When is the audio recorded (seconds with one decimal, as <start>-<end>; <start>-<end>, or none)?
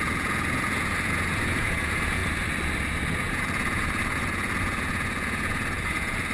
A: 2.2-3.3